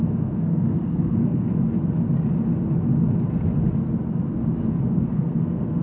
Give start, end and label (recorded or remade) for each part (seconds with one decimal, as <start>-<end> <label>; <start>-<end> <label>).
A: 0.0-1.5 remade; 1.5-5.0 recorded; 5.0-5.8 remade